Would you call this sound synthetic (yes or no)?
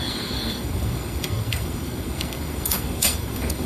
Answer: yes